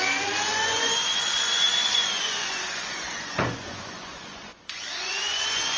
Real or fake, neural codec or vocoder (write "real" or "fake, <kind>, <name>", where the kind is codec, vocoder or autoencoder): fake, vocoder, Vocos